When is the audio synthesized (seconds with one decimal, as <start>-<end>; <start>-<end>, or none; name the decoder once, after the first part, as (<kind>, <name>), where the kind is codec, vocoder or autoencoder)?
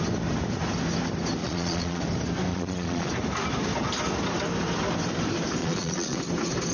1.4-2.0 (vocoder, Vocos); 2.5-3.1; 5.6-6.2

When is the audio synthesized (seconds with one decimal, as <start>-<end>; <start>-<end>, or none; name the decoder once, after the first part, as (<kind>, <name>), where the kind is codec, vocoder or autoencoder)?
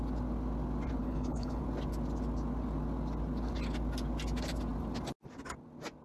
1.0-1.6 (codec, HILCodec)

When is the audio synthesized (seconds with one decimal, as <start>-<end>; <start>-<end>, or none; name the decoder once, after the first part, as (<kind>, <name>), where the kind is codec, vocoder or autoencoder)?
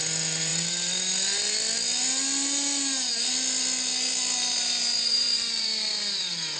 5.1-5.9 (vocoder, BigVGAN v2)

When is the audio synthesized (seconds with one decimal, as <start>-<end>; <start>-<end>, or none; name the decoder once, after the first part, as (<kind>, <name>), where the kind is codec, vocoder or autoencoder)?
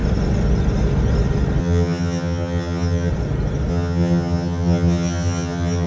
1.6-3.1 (vocoder, HiFi-GAN); 3.7-5.9